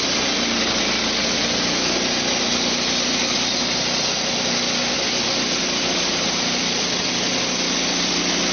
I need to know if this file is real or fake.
real